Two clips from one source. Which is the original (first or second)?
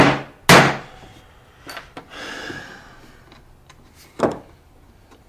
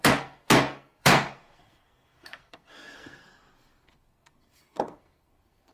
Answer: first